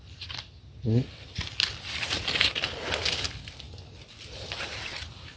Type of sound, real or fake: real